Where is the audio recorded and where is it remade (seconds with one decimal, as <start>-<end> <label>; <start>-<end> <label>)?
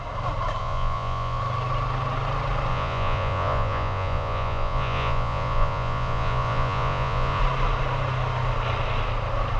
0.0-0.6 recorded; 0.6-1.4 remade; 1.4-2.7 recorded; 2.7-7.4 remade; 7.4-9.6 recorded